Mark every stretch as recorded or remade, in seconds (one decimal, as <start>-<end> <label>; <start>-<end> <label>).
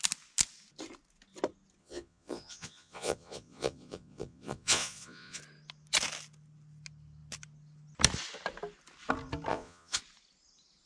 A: 0.0-1.8 recorded; 1.8-5.4 remade; 5.4-9.5 recorded; 9.5-10.0 remade; 10.0-10.9 recorded